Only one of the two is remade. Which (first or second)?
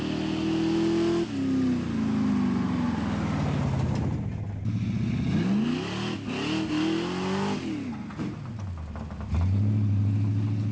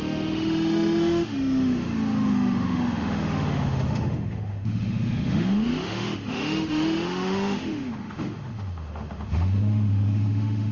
second